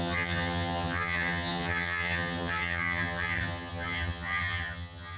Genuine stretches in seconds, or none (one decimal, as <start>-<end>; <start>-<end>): none